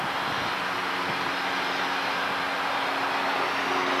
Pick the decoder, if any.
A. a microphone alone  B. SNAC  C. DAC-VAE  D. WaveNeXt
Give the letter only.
A